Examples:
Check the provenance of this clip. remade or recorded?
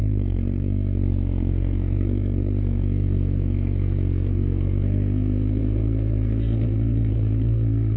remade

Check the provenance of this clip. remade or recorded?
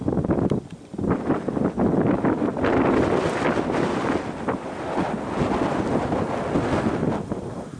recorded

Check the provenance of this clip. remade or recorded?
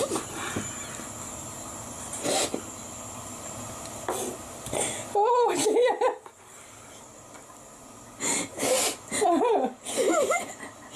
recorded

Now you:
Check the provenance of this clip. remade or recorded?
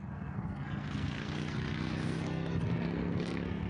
remade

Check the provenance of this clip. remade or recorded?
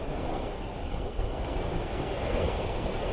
remade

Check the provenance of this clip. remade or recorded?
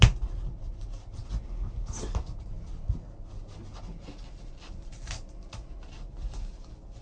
recorded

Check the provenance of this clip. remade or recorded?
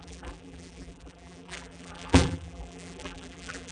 remade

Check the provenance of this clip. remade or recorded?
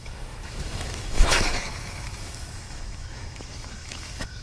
remade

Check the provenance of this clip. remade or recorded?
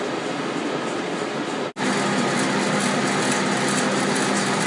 recorded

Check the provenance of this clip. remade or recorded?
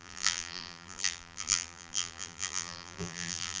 remade